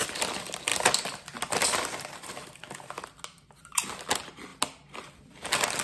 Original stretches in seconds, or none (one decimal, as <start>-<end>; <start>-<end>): 0.0-5.8